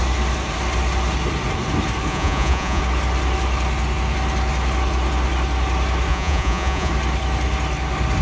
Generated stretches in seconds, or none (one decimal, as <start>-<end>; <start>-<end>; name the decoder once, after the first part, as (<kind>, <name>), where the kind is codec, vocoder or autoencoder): 2.1-2.8 (vocoder, Vocos); 6.1-6.9